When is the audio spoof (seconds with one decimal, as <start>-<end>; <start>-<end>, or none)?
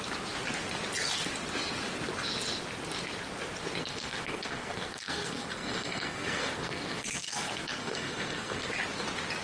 3.8-8.7